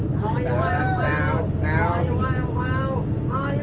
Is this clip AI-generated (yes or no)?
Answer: no